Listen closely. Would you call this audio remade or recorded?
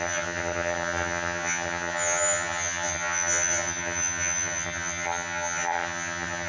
remade